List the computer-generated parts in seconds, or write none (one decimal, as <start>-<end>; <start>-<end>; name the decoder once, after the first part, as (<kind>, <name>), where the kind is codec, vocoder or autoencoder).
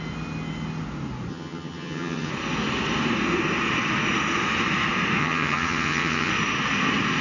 1.3-2.3 (vocoder, HiFi-GAN); 5.2-6.3